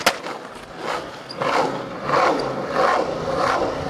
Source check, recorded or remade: recorded